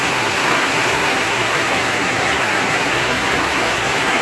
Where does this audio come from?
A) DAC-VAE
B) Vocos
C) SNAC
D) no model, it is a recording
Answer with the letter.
C